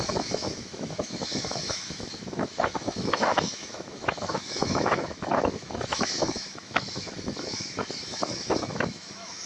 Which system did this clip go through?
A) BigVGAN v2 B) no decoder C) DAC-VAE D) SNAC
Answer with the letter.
C